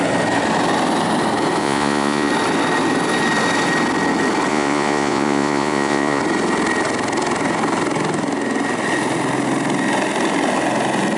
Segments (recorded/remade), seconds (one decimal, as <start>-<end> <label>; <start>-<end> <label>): 0.0-1.6 recorded; 1.6-2.3 remade; 2.3-4.5 recorded; 4.5-6.2 remade; 6.2-11.2 recorded